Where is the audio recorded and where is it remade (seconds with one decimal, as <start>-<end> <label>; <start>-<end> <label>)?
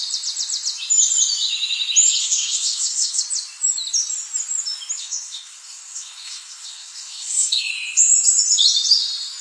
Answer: 0.0-2.2 recorded; 2.2-3.2 remade; 3.2-5.0 recorded; 5.0-7.7 remade; 7.7-9.4 recorded